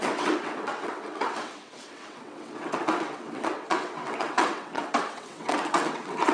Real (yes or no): no